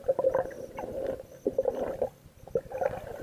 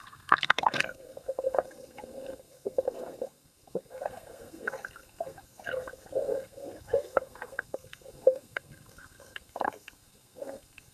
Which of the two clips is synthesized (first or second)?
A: second